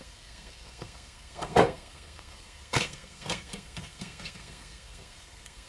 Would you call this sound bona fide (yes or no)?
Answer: no